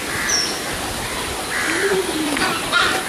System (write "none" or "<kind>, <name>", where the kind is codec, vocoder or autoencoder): none